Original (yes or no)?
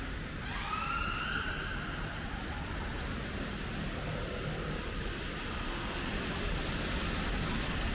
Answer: yes